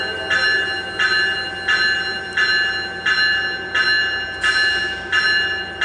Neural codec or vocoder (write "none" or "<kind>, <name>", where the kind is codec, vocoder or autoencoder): none